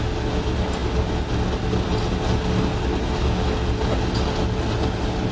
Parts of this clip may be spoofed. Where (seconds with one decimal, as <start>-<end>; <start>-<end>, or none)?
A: none